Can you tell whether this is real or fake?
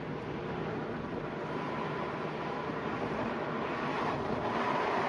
real